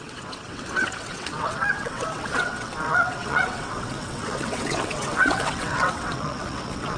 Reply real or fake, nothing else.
fake